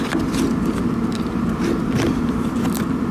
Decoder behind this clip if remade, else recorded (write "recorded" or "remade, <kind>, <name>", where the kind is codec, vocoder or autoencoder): recorded